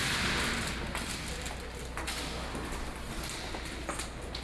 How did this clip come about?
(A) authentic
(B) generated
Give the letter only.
A